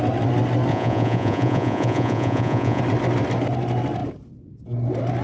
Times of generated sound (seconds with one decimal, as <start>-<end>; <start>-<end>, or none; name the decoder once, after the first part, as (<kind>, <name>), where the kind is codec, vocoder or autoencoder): 0.7-2.8 (vocoder, Vocos)